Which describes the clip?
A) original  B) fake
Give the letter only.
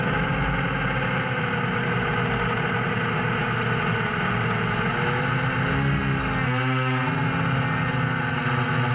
A